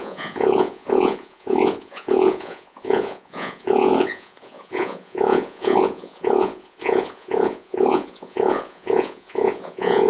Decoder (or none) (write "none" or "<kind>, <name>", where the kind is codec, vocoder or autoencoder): vocoder, Vocos